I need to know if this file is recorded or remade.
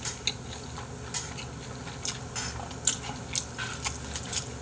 recorded